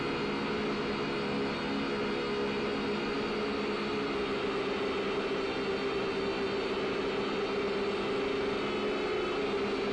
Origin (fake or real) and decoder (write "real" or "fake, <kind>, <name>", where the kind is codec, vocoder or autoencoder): real